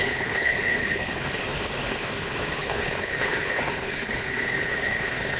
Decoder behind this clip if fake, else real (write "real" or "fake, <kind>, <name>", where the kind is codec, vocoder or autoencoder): fake, codec, HILCodec